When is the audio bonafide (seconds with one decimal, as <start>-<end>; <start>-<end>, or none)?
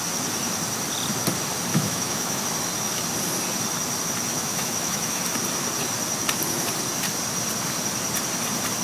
0.0-1.7; 2.4-4.3; 5.2-8.8